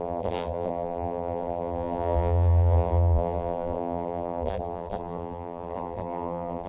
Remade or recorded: remade